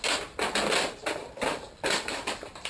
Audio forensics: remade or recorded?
recorded